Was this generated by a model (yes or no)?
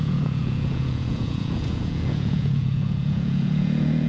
yes